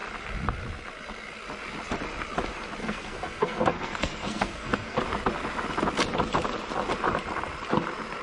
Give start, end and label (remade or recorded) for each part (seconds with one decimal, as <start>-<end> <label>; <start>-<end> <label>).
0.0-2.8 recorded; 2.8-5.0 remade; 5.0-8.2 recorded